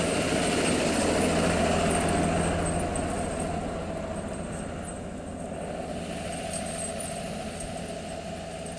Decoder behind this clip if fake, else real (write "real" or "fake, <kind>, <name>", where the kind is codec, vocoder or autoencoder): real